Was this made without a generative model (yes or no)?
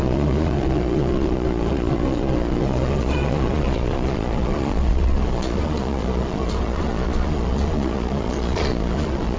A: no